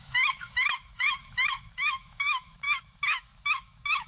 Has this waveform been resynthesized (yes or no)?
yes